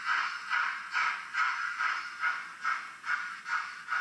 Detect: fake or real real